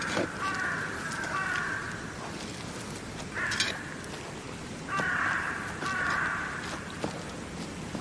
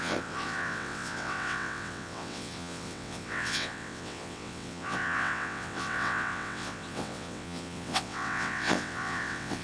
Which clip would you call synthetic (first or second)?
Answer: second